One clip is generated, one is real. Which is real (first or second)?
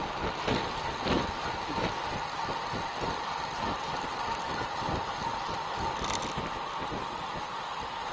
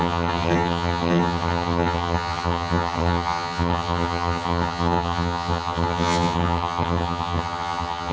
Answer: first